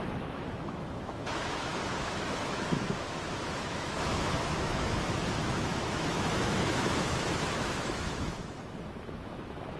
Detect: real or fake fake